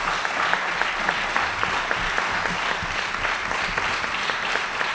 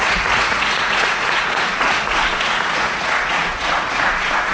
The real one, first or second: first